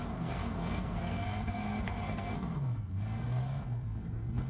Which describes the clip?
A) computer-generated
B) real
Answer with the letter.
A